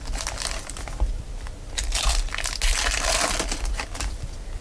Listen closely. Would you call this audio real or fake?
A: real